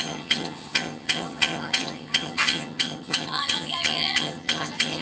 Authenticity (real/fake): fake